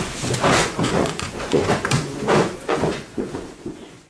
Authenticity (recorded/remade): remade